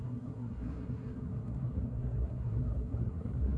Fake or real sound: fake